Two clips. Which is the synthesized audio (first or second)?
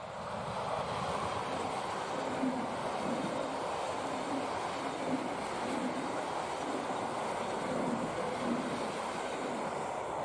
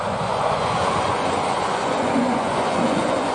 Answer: second